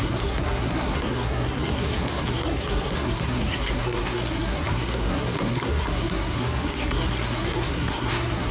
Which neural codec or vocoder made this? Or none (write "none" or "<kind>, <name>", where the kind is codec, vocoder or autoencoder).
codec, SNAC